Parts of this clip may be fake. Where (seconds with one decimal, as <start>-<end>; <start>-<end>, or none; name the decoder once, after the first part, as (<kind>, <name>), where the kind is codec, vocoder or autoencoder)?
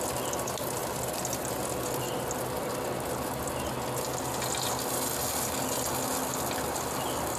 none